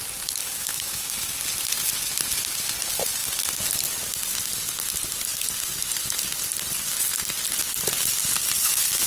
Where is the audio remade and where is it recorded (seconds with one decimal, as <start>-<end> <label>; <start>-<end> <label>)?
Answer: 0.0-0.4 recorded; 0.4-1.4 remade; 1.4-9.1 recorded